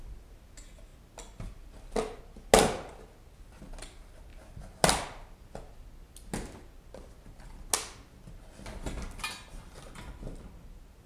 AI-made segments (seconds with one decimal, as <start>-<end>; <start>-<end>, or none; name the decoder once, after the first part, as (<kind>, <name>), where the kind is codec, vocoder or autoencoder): none

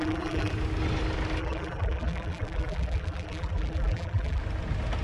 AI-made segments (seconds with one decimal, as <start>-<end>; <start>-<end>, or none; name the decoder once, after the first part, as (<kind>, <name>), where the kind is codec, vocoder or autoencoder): 0.0-0.5 (vocoder, BigVGAN v2); 1.4-4.4

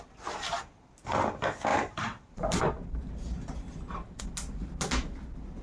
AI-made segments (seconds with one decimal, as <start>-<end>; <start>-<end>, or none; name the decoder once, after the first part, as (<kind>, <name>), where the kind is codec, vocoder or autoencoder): 1.7-4.2 (vocoder, BigVGAN v2)

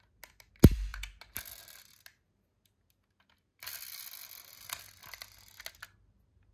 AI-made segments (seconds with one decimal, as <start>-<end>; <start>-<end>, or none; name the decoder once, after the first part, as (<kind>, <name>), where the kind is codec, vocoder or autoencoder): none

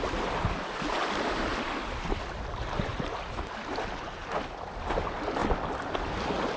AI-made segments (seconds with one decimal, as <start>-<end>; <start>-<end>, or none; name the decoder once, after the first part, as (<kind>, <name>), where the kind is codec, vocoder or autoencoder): 0.0-1.0 (vocoder, BigVGAN v2); 5.0-5.4